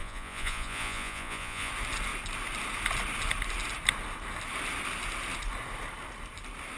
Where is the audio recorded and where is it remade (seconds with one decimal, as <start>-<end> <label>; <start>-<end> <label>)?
0.0-1.7 remade; 1.7-6.8 recorded